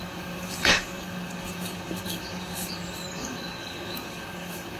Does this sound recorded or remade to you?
remade